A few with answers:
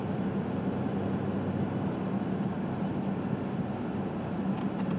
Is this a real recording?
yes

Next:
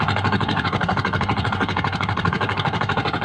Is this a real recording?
no